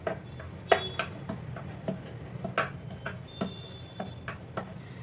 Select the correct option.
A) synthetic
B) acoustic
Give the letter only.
B